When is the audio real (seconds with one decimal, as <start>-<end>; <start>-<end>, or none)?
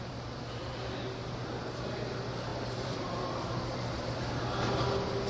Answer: 0.0-2.5; 4.2-5.3